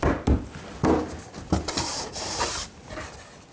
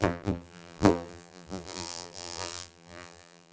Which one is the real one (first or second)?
first